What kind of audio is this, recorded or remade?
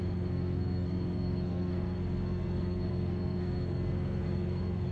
remade